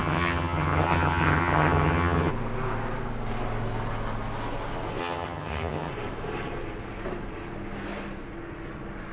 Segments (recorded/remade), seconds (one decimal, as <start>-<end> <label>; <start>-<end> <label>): 0.0-2.3 remade; 2.3-5.0 recorded; 5.0-5.9 remade; 5.9-9.1 recorded